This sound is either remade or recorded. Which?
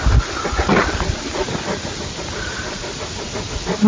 recorded